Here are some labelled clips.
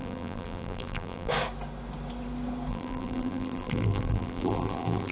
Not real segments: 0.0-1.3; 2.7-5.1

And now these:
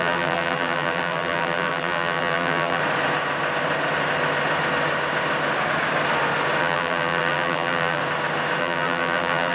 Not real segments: 0.0-2.8; 6.6-8.0; 8.6-9.5